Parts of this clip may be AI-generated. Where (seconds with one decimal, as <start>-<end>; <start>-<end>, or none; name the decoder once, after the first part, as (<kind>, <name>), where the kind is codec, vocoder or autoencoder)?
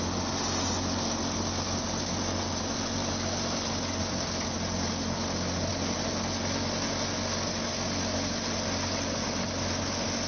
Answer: none